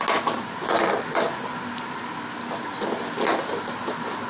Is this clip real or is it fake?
real